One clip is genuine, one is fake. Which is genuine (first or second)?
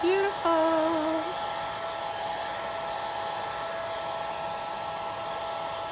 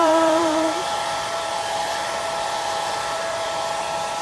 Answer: first